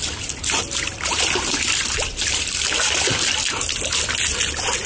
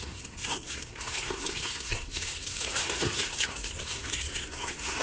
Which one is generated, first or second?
second